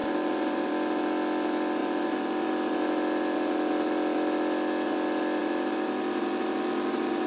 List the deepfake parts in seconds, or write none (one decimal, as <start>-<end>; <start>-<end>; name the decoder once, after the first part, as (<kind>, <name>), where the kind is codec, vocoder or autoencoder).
0.0-0.7 (vocoder, BigVGAN v2); 1.8-2.5; 5.4-7.3